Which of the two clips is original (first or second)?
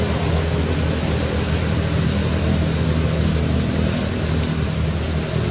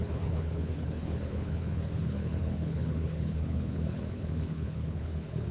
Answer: first